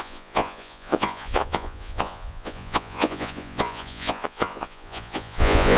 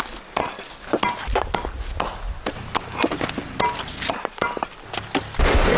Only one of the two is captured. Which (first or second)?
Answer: second